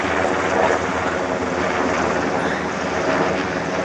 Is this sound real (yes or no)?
yes